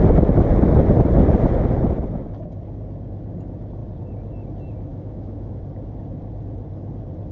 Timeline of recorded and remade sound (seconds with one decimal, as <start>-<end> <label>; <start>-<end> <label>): 0.0-4.9 recorded; 4.9-5.6 remade; 5.6-7.3 recorded